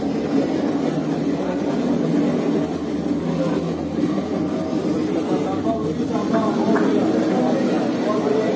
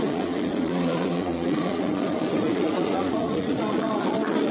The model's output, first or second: second